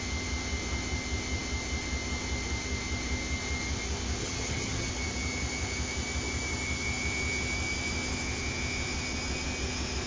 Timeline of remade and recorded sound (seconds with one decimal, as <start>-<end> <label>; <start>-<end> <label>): 0.0-4.2 recorded; 4.2-4.9 remade; 4.9-10.1 recorded